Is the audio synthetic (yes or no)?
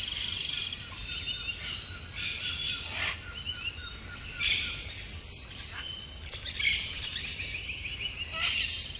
no